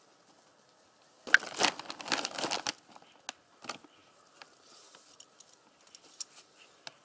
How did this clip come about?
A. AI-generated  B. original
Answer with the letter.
B